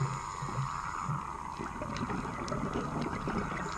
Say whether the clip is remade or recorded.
remade